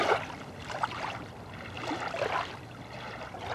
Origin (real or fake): real